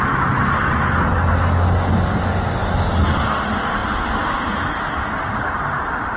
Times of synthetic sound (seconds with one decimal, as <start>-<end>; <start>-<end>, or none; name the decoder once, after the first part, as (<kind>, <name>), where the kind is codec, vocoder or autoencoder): none